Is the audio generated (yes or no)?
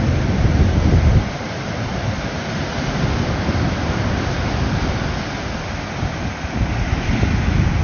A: no